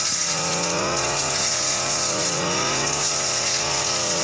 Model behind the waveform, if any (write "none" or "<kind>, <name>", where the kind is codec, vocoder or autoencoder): vocoder, Vocos